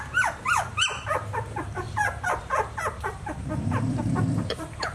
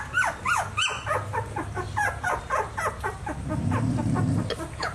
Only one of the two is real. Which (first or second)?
second